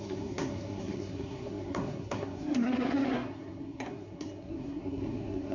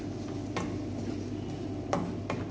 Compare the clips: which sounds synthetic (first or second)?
first